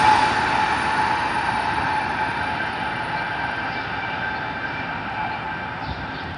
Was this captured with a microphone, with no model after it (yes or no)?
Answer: yes